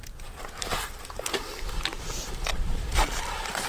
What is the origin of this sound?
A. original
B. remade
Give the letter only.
B